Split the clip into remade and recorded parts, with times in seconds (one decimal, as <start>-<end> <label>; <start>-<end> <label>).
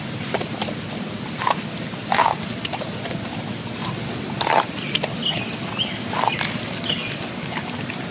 0.0-8.1 recorded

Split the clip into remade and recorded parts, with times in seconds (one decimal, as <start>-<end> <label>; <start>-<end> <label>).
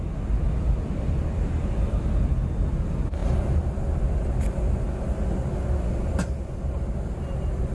0.0-7.7 recorded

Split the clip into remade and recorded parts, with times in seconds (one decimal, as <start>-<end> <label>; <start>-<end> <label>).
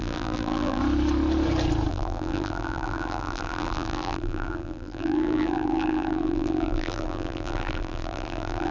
0.0-0.8 remade; 0.8-1.9 recorded; 1.9-8.7 remade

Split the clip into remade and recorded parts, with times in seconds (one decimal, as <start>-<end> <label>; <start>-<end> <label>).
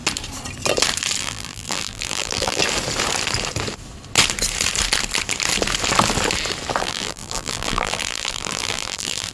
0.0-1.2 recorded; 1.2-2.6 remade; 2.6-6.8 recorded; 6.8-9.3 remade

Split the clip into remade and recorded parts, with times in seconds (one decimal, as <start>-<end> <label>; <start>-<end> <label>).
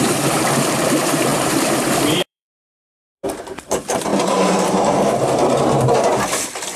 0.0-6.1 remade; 6.1-6.8 recorded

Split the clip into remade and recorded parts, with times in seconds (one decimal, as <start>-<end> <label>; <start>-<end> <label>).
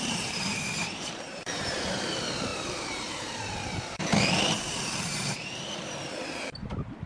0.0-7.1 remade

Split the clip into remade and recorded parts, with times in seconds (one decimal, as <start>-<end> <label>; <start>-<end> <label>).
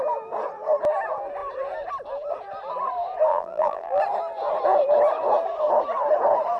0.0-3.3 recorded; 3.3-4.0 remade; 4.0-6.6 recorded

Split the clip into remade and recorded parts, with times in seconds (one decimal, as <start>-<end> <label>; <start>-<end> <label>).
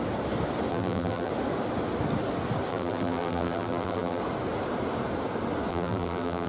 0.0-0.7 recorded; 0.7-1.3 remade; 1.3-2.7 recorded; 2.7-4.2 remade; 4.2-5.7 recorded; 5.7-6.5 remade